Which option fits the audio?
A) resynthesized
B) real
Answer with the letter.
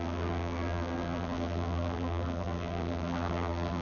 A